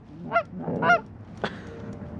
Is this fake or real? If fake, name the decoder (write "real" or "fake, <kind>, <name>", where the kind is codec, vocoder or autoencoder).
real